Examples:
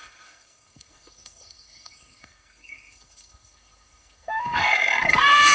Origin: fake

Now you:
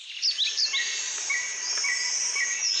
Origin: real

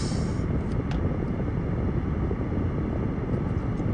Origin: real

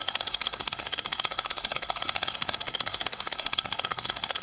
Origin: fake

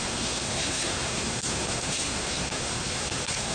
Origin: fake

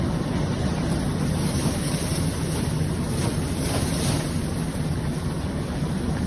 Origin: real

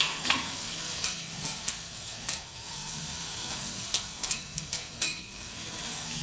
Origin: fake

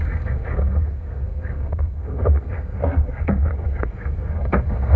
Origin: fake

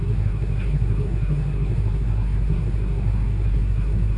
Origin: fake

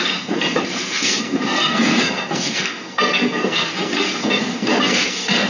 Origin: fake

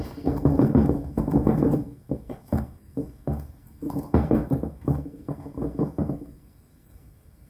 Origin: fake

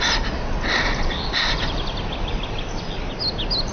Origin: real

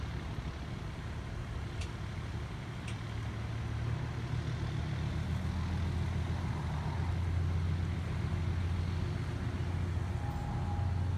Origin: real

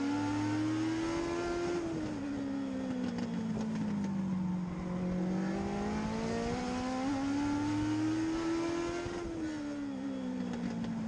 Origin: real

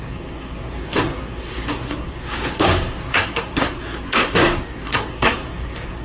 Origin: fake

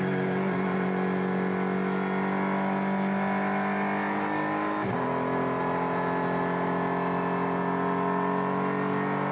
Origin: real